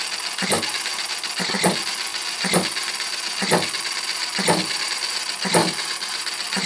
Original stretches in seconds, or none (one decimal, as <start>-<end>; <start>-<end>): 0.0-6.7